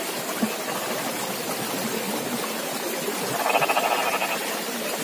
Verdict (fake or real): real